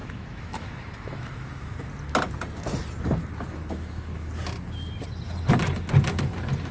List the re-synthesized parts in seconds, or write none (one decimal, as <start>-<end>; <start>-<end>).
0.0-1.9; 3.5-4.3